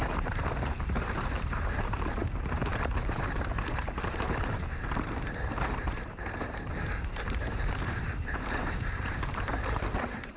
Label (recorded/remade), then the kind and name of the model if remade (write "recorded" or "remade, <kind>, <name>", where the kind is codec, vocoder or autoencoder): remade, vocoder, BigVGAN v2